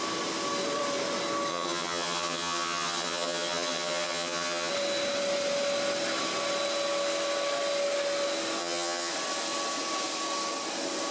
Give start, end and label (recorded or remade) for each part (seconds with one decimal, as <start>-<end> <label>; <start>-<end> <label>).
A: 0.0-1.5 recorded; 1.5-4.7 remade; 4.7-8.6 recorded; 8.6-9.1 remade; 9.1-11.1 recorded